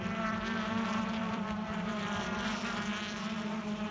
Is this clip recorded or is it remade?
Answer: remade